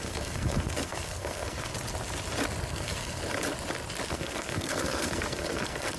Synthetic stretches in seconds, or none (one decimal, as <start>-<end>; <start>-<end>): 0.0-1.7; 2.7-3.2; 4.1-6.0